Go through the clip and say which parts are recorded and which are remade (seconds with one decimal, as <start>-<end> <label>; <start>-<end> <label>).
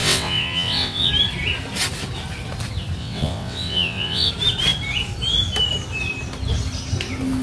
0.0-1.1 remade; 1.1-3.0 recorded; 3.0-4.3 remade; 4.3-7.4 recorded